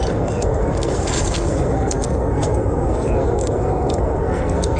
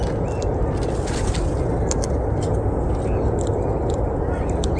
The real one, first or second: second